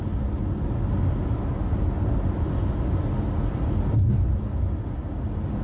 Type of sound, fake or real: real